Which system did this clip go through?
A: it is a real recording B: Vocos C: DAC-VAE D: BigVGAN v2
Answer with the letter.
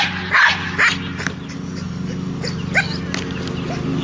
A